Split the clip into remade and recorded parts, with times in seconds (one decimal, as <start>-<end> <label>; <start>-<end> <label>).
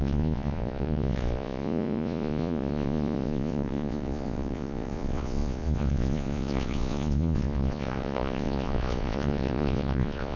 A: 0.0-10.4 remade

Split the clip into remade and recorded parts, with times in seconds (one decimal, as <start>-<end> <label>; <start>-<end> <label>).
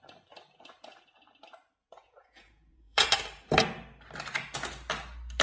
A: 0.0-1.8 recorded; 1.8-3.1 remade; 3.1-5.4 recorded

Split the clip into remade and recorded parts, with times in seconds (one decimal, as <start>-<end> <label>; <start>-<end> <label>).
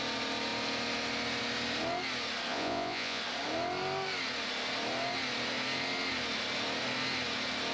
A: 0.0-2.5 recorded; 2.5-3.2 remade; 3.2-7.7 recorded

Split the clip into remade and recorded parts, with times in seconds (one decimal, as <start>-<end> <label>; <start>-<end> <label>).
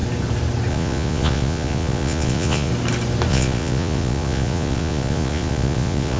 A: 0.0-0.7 recorded; 0.7-2.7 remade; 2.7-3.3 recorded; 3.3-6.2 remade